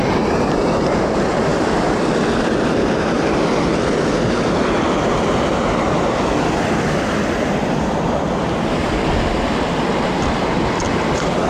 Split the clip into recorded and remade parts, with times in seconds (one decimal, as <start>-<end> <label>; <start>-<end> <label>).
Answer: 0.0-11.5 recorded

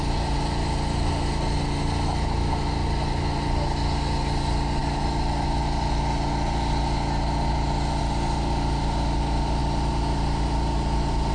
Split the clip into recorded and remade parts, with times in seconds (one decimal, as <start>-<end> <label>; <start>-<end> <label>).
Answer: 0.0-11.3 recorded

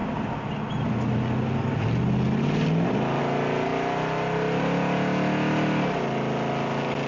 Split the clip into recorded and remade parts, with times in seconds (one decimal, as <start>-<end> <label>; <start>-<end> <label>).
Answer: 0.0-7.1 recorded

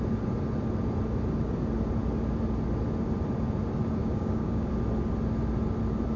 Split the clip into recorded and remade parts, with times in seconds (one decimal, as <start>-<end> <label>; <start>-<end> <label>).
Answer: 0.0-4.0 recorded; 4.0-4.7 remade; 4.7-6.2 recorded

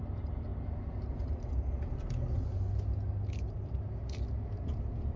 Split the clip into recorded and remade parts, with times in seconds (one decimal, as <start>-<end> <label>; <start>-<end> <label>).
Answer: 0.0-5.2 recorded